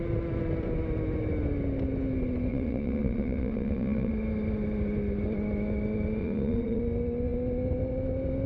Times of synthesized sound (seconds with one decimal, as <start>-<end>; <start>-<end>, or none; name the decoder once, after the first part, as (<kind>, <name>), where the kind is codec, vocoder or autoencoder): 2.5-4.1 (vocoder, Vocos); 6.2-6.8